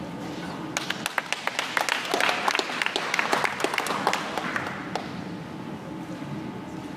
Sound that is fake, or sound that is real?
real